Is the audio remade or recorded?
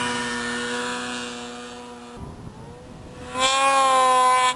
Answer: recorded